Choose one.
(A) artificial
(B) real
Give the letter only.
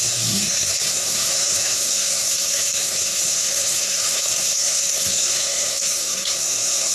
A